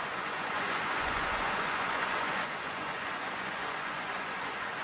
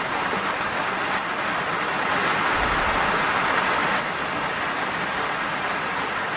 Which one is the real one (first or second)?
second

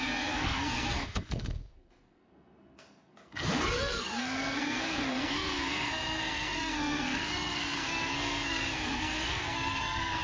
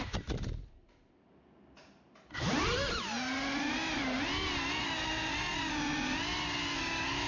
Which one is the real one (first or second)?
second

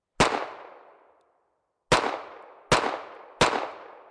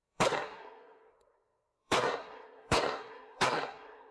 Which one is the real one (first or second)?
first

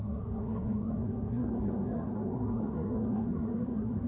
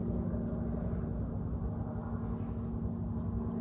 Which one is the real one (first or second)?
second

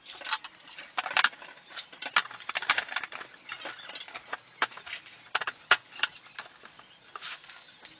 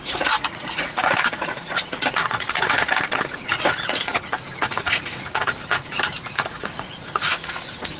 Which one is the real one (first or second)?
first